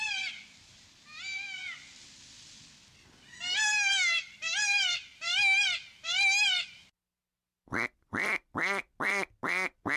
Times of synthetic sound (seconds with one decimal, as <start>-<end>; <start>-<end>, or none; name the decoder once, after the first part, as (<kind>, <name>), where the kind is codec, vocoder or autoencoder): none